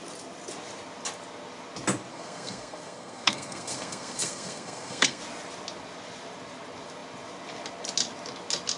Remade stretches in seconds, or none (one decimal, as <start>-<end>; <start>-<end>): 2.1-5.2